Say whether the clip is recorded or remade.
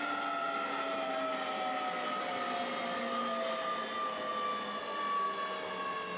recorded